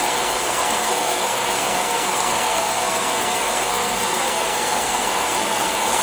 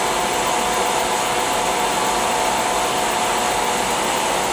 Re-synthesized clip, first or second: first